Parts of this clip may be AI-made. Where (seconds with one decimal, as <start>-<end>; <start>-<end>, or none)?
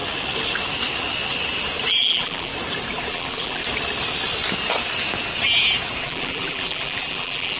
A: 1.9-2.5; 3.1-3.6; 6.0-7.6